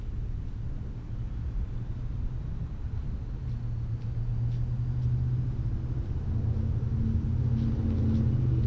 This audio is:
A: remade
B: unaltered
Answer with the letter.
B